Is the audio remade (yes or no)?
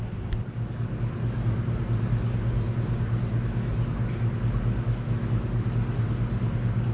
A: no